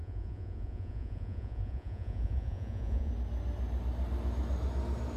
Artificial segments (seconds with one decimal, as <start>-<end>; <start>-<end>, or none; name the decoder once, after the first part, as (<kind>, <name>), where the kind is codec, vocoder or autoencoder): 0.0-3.1 (vocoder, Vocos)